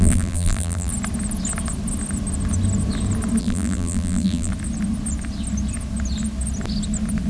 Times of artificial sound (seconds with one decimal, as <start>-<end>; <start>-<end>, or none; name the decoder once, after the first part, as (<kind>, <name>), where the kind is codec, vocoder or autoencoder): 0.0-0.9 (vocoder, BigVGAN v2); 3.4-4.5